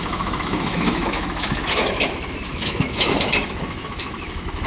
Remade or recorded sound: remade